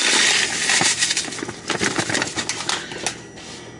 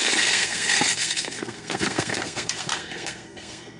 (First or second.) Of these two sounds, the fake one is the second